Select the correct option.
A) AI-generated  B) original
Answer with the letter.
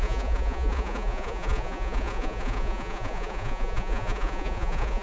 A